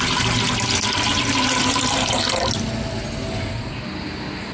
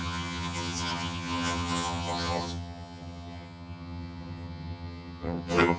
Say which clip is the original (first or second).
first